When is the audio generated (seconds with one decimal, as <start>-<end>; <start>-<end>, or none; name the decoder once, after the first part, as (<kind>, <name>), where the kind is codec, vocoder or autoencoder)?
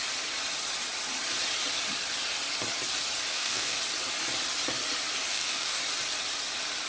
3.3-3.8 (codec, DAC); 5.3-5.8